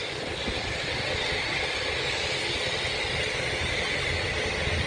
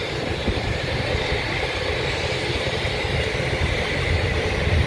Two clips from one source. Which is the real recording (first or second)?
first